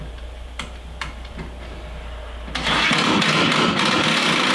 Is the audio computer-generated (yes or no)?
no